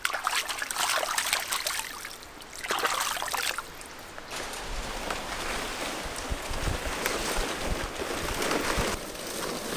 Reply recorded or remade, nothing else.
recorded